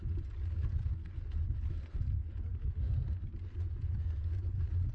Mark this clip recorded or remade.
recorded